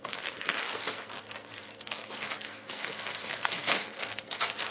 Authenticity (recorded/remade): remade